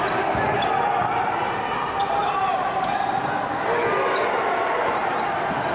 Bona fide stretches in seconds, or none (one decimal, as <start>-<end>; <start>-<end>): 0.0-2.2; 3.0-4.7; 5.3-5.7